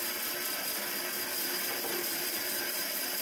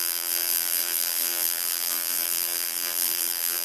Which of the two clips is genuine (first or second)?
first